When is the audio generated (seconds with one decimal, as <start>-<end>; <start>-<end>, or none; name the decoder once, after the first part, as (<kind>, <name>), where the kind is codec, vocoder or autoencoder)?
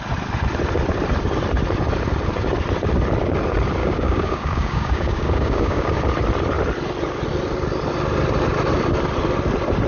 3.8-6.0 (codec, DAC)